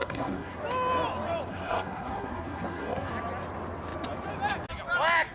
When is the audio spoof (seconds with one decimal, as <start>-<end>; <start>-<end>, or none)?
0.0-0.6; 1.5-3.1

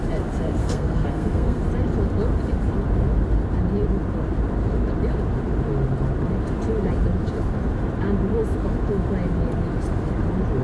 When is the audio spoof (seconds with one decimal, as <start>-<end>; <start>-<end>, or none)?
0.6-1.6

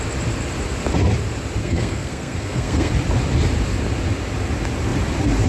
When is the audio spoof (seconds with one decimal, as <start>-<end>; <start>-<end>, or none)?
1.6-2.9

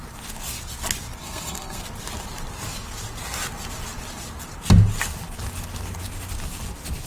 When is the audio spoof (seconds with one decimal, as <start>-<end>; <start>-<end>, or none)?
1.2-1.8